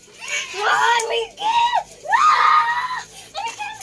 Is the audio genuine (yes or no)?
yes